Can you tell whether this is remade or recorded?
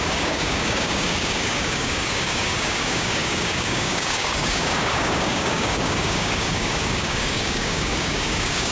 remade